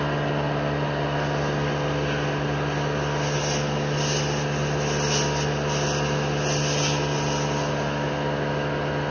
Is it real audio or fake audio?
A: real